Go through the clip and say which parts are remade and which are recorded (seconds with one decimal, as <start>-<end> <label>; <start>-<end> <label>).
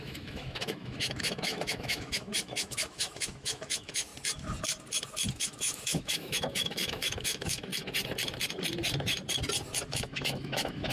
0.0-4.1 remade; 4.1-5.3 recorded; 5.3-7.7 remade; 7.7-9.9 recorded; 9.9-10.9 remade